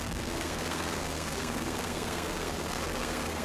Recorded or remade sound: remade